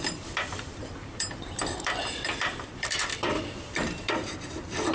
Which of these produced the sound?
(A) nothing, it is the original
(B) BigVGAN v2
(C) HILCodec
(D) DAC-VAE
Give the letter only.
B